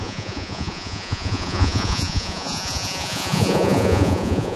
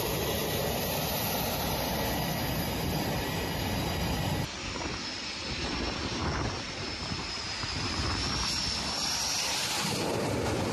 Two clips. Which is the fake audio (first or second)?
first